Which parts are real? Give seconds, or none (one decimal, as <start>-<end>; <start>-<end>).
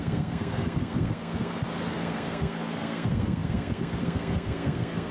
none